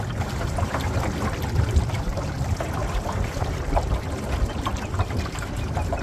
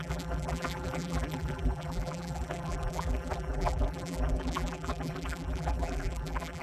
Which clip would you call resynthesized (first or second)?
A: second